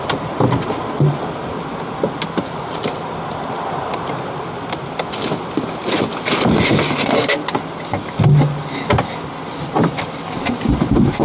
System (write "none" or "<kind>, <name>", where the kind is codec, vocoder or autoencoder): none